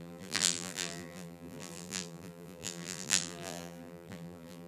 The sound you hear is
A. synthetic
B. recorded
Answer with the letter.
A